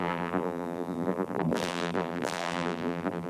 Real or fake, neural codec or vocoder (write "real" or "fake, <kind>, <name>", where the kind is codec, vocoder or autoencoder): fake, vocoder, BigVGAN v2